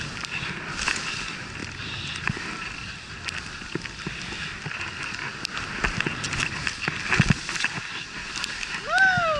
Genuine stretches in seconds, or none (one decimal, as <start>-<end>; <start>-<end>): 0.0-9.4